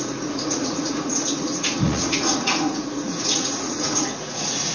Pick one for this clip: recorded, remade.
remade